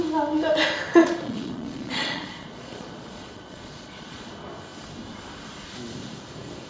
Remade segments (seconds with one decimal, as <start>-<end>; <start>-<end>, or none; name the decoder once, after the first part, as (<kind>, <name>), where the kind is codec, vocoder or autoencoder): 0.9-4.3 (vocoder, Vocos)